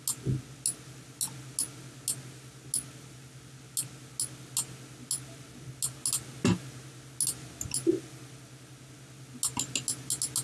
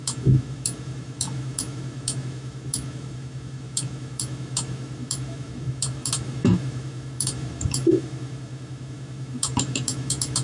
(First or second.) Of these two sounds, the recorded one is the first